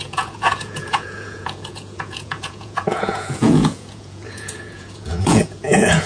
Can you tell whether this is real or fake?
fake